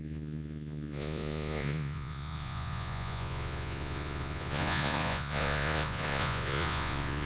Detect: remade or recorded remade